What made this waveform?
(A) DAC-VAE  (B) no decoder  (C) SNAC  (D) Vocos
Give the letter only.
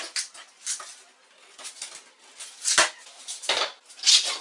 B